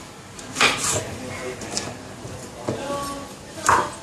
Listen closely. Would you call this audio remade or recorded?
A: recorded